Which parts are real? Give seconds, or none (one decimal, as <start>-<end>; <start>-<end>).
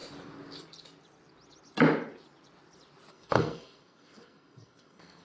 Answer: 0.0-3.1